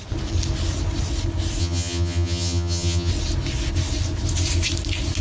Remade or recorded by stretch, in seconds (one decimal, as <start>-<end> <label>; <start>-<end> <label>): 0.0-1.6 recorded; 1.6-3.1 remade; 3.1-5.2 recorded